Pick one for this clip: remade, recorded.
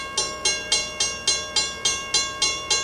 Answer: recorded